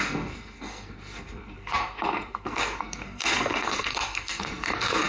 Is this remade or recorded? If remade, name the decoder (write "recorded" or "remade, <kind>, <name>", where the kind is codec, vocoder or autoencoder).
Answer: remade, codec, SNAC